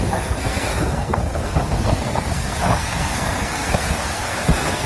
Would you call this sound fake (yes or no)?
yes